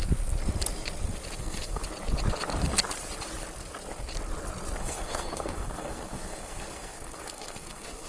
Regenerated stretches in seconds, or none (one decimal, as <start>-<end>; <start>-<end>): 1.4-1.8; 4.8-8.1